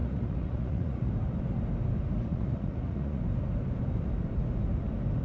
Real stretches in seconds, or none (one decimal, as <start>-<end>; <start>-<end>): 1.1-2.3; 3.2-5.2